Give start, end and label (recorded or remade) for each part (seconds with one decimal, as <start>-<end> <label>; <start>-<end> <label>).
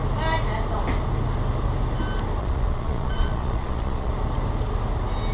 0.0-2.4 recorded; 2.4-4.1 remade; 4.1-5.3 recorded